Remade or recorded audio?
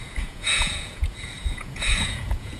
remade